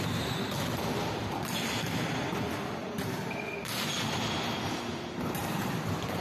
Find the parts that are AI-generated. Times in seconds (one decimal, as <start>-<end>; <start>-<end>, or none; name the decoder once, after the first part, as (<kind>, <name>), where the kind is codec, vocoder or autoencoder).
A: 2.8-3.5 (vocoder, BigVGAN v2); 4.9-6.2